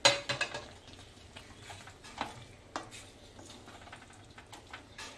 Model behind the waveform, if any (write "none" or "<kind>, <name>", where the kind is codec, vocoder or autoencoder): none